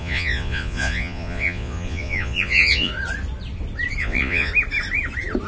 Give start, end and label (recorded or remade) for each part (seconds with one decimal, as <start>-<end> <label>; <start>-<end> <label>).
0.0-2.9 remade; 2.9-4.0 recorded; 4.0-4.5 remade; 4.5-5.5 recorded